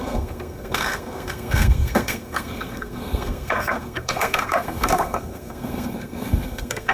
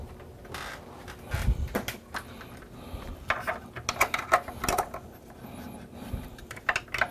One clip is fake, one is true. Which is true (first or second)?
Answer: second